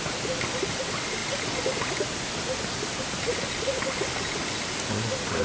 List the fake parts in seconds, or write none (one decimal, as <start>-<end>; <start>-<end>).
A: none

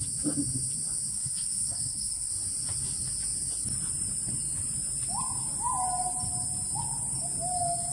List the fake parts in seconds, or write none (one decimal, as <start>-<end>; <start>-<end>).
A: 1.1-2.3

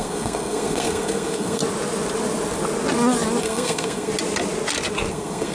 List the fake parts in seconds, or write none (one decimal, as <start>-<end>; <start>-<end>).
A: 0.0-1.6; 3.4-4.1; 5.1-5.5

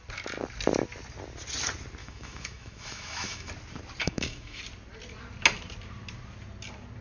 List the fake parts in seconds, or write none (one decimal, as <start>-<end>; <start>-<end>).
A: 2.0-3.5; 4.0-4.6

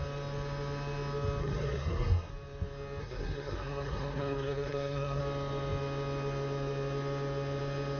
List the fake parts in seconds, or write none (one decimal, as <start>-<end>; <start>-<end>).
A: 1.4-2.3; 3.0-5.2